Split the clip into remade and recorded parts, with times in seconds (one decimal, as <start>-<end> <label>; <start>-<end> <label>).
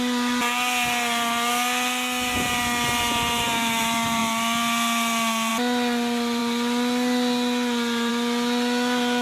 0.0-9.2 recorded